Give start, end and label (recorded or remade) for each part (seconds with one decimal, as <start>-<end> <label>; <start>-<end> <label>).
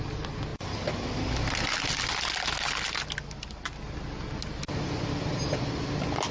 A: 0.0-6.3 recorded